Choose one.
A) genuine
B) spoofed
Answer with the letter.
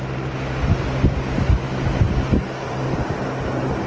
A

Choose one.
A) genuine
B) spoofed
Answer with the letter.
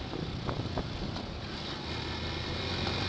A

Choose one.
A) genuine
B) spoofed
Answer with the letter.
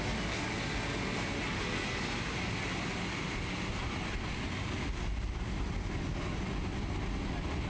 A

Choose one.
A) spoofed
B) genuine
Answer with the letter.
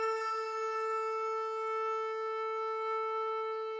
B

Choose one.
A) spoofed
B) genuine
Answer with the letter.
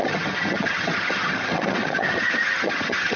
A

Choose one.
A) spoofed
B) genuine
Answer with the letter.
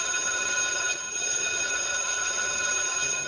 A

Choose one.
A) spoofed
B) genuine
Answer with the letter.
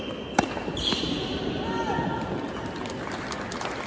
B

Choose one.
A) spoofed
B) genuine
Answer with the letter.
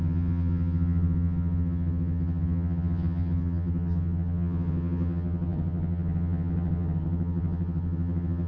A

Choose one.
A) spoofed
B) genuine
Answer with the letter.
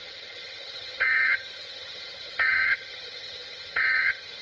A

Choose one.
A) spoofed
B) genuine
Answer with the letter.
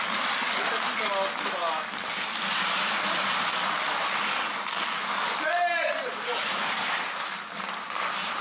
B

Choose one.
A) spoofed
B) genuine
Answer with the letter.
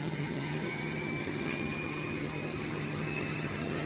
A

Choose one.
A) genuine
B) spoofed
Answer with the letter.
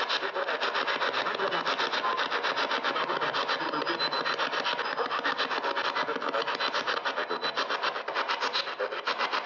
A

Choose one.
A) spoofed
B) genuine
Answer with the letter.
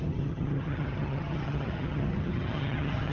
A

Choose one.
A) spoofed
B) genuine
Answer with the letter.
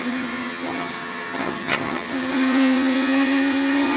A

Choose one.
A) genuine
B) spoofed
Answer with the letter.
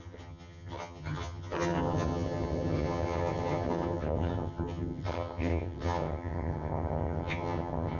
B